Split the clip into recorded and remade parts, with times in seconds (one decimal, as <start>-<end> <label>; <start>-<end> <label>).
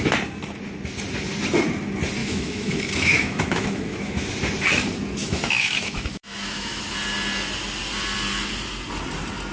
0.0-2.2 recorded; 2.2-4.3 remade; 4.3-5.2 recorded; 5.2-6.8 remade; 6.8-9.5 recorded